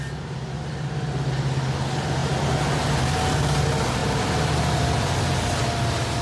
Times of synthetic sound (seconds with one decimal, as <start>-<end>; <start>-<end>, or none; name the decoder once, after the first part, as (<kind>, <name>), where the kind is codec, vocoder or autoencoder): none